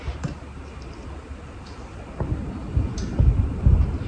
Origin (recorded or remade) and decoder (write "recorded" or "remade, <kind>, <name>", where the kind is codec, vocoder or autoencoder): recorded